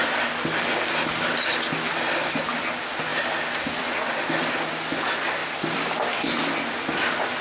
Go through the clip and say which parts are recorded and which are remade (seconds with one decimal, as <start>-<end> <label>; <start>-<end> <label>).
0.0-7.4 recorded